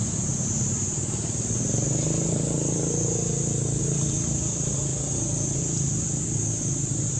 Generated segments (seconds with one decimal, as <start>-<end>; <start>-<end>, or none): 3.8-4.9